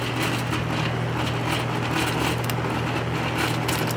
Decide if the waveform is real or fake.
real